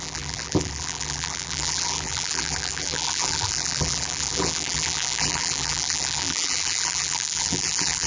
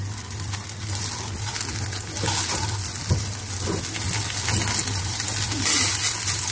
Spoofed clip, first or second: first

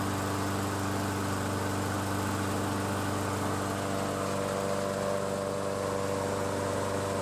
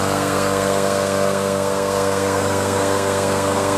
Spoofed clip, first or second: second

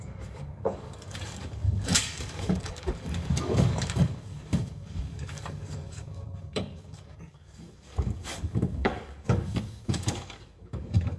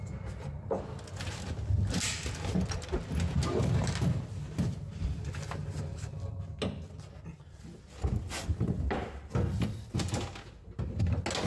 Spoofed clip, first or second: first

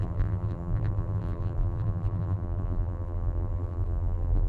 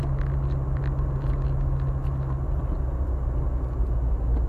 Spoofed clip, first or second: first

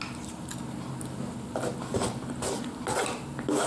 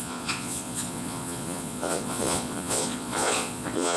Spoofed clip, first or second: second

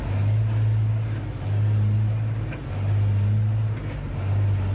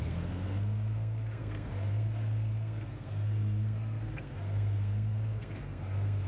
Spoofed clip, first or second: second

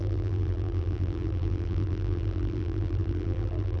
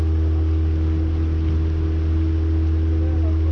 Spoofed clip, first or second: first